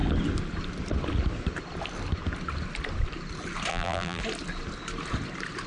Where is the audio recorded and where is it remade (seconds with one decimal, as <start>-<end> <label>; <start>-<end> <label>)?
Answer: 0.0-3.7 recorded; 3.7-4.2 remade; 4.2-5.7 recorded

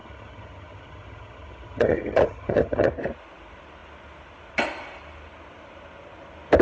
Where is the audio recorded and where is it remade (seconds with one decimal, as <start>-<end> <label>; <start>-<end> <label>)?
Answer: 0.0-2.9 remade; 2.9-6.6 recorded

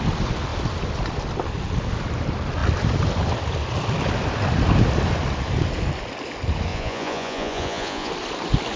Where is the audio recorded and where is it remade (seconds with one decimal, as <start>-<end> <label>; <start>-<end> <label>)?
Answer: 0.0-6.7 recorded; 6.7-8.1 remade; 8.1-8.8 recorded

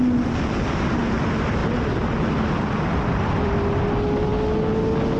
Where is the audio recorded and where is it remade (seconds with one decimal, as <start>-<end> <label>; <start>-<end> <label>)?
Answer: 0.0-5.2 recorded

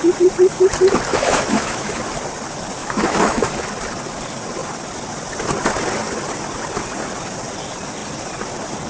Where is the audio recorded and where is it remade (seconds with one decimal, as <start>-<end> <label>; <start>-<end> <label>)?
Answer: 0.0-1.1 recorded; 1.1-2.0 remade; 2.0-2.8 recorded; 2.8-3.5 remade; 3.5-8.9 recorded